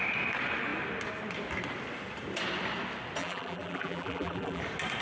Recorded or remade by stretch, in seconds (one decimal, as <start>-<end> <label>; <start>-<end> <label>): 0.0-3.2 recorded; 3.2-4.6 remade; 4.6-5.0 recorded